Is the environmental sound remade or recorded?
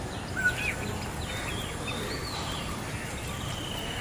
recorded